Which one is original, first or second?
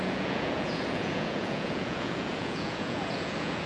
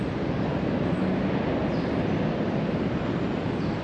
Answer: second